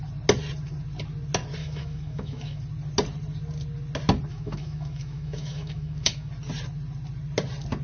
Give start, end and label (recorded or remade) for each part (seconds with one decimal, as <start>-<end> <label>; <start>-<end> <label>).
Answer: 0.0-1.6 recorded; 1.6-2.6 remade; 2.6-4.3 recorded; 4.3-6.3 remade; 6.3-7.8 recorded